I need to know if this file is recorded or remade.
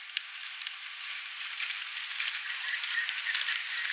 recorded